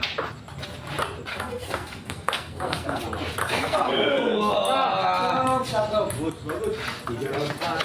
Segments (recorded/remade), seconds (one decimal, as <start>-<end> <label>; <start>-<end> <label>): 0.0-1.3 recorded; 1.3-3.0 remade; 3.0-3.4 recorded; 3.4-4.5 remade; 4.5-7.8 recorded